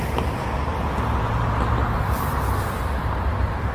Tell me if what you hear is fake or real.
real